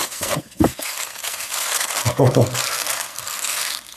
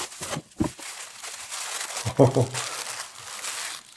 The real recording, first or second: second